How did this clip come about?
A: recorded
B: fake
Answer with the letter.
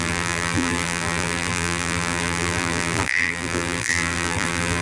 B